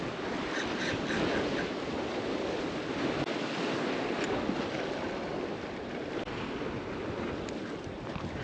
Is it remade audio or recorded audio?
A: recorded